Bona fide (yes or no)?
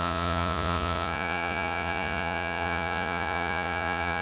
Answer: no